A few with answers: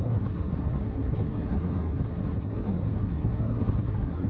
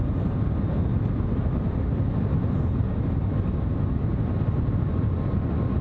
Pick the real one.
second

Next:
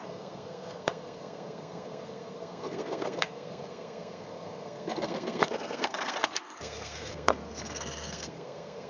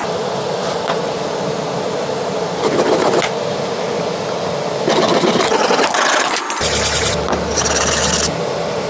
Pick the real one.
second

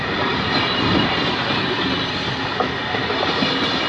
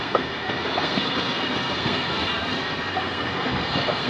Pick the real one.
first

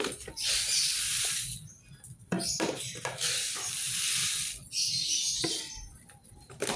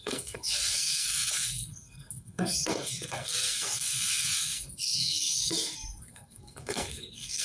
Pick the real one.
first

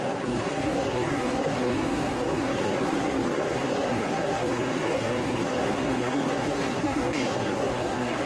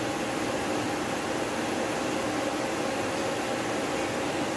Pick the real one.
second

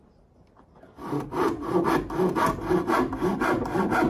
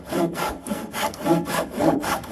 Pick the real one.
first